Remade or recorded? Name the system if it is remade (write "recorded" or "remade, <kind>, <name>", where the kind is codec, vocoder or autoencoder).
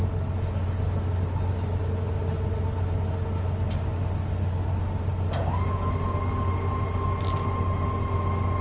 recorded